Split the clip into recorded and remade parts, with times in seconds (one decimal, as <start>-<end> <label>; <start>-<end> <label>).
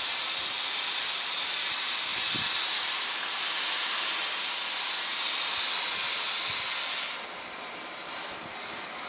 0.0-2.1 remade; 2.1-2.7 recorded; 2.7-5.1 remade; 5.1-6.4 recorded; 6.4-9.1 remade